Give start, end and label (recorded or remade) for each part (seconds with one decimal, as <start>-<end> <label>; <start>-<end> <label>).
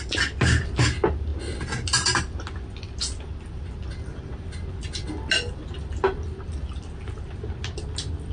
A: 0.0-8.3 recorded